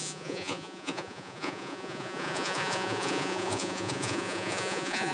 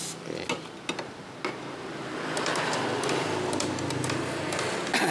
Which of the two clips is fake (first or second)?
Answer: first